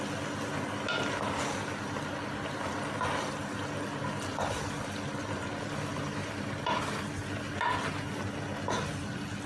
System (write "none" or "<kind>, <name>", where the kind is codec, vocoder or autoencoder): none